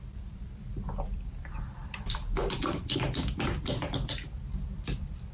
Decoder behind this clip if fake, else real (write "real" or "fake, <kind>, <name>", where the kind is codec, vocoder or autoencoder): fake, vocoder, BigVGAN v2